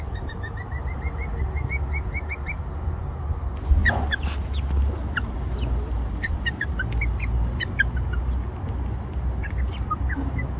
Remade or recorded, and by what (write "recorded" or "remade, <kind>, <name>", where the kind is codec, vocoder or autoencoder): recorded